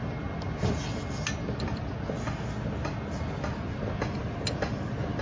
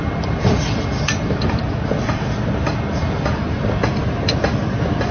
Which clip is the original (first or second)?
first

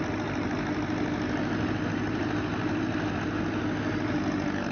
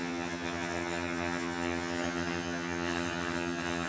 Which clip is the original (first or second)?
first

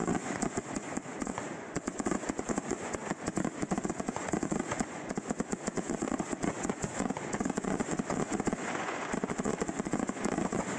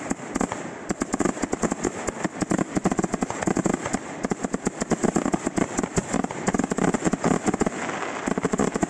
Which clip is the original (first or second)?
second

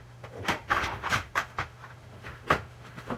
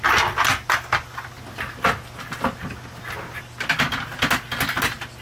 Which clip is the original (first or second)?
second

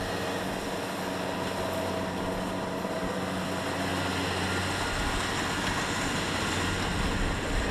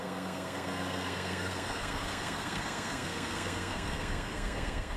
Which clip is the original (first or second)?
first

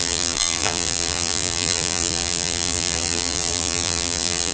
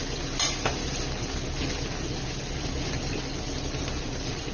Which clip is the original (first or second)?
second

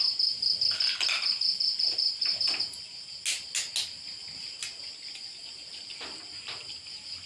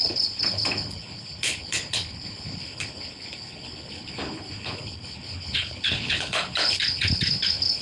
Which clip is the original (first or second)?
first